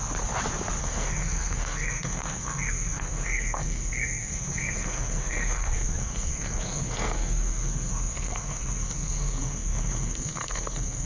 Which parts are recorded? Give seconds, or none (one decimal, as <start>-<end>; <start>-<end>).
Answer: 0.0-0.8